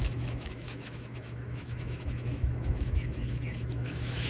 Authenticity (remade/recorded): remade